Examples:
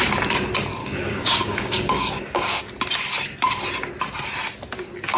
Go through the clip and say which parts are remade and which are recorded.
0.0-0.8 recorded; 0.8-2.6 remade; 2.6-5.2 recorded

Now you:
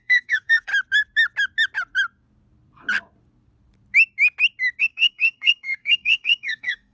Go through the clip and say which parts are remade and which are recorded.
0.0-0.7 remade; 0.7-4.8 recorded; 4.8-6.9 remade

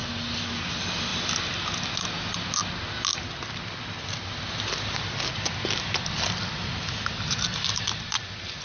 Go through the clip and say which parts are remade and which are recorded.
0.0-8.6 recorded

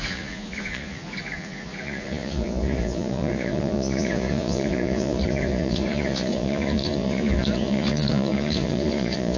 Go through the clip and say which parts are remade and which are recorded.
0.0-9.4 remade